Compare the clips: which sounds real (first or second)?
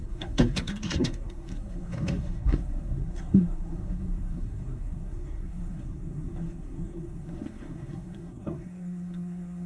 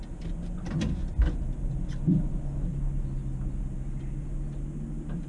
second